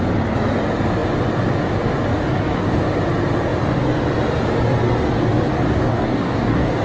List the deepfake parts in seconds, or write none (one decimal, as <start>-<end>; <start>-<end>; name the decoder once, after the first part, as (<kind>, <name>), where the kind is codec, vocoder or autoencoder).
2.1-2.8 (codec, DAC); 5.5-6.8